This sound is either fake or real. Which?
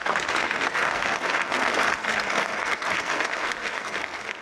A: fake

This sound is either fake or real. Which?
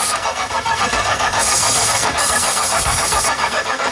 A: fake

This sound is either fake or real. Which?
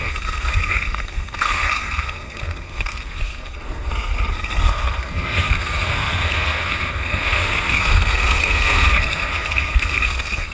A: fake